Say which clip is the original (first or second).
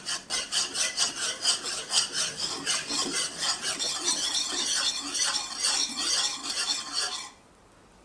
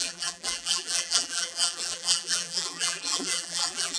first